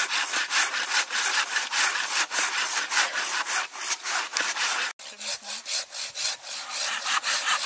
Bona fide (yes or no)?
yes